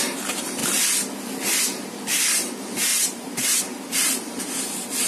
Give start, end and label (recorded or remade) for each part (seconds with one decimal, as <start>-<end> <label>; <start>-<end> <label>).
0.0-2.9 recorded; 2.9-3.6 remade; 3.6-5.1 recorded